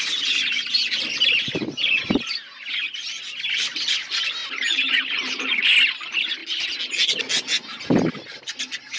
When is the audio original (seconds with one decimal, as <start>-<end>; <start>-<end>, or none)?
0.0-4.4; 5.6-9.0